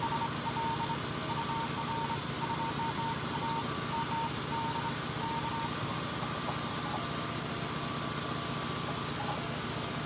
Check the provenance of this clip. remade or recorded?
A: recorded